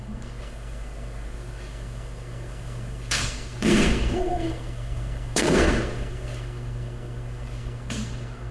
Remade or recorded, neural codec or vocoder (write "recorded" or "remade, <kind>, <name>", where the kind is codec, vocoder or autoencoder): remade, codec, SNAC